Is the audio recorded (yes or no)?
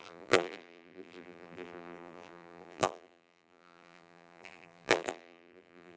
no